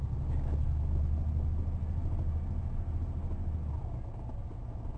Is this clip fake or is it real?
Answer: real